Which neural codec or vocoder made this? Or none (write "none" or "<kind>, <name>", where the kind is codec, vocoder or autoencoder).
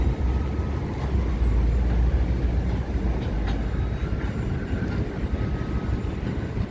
none